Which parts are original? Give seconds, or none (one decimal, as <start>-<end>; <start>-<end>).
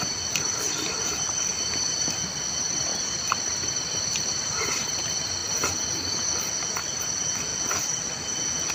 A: 5.4-6.7; 7.5-8.7